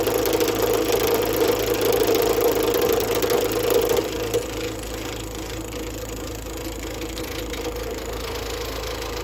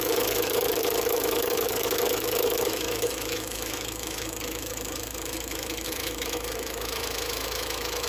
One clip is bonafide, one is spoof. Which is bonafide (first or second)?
first